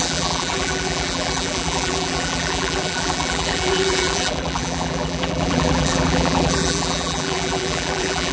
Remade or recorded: remade